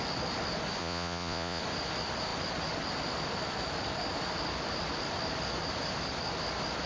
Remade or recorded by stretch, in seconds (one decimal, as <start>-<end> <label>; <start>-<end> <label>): 0.0-0.8 recorded; 0.8-1.6 remade; 1.6-6.9 recorded